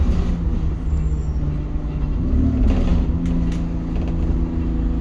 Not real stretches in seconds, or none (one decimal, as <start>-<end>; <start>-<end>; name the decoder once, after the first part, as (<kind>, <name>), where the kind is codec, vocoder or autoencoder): none